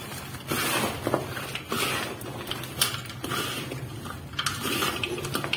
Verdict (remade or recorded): recorded